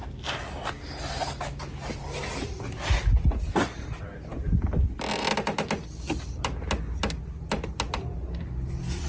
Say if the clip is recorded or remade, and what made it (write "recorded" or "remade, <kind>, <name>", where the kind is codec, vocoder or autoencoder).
recorded